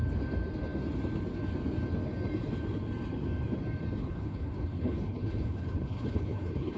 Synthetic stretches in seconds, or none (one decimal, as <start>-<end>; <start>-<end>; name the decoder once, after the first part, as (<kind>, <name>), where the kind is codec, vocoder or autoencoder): 4.0-6.8 (codec, HILCodec)